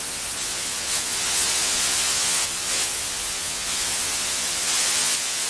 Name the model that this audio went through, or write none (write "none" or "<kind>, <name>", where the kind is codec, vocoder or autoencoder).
vocoder, Vocos